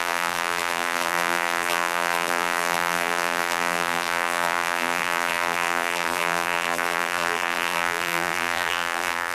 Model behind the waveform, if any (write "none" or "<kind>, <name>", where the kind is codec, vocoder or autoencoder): vocoder, BigVGAN v2